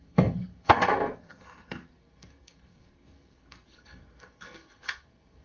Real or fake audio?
fake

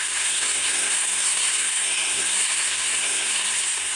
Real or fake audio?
fake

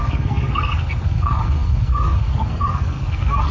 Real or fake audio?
fake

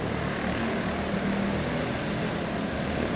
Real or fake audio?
real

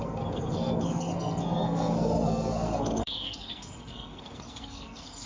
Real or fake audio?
fake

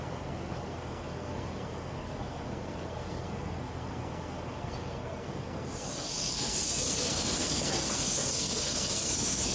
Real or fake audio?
fake